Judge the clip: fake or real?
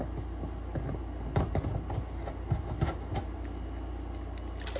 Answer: real